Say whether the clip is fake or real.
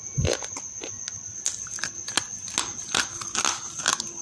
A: real